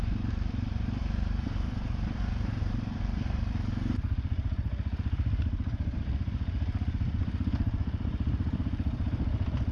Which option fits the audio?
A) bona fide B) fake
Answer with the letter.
B